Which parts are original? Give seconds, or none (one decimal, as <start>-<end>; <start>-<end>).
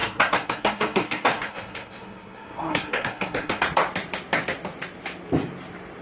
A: 3.6-6.0